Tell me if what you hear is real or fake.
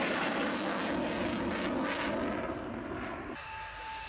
real